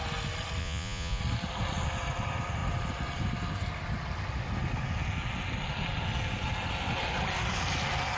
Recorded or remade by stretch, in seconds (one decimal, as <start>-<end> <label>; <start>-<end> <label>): 0.0-0.6 recorded; 0.6-1.2 remade; 1.2-8.2 recorded